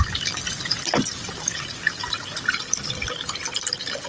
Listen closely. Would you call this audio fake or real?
real